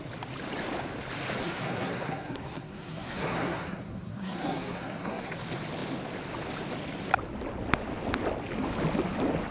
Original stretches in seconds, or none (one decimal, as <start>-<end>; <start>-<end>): 0.0-1.4; 5.3-9.5